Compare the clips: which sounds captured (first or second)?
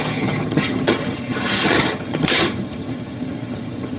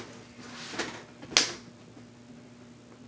second